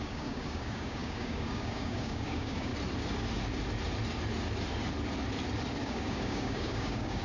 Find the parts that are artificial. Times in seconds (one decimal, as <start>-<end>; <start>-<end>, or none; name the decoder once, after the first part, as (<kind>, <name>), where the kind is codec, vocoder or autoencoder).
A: 0.0-2.7 (codec, DAC); 5.8-7.2